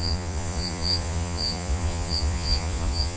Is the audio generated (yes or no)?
yes